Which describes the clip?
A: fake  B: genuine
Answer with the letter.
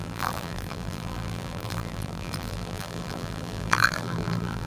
A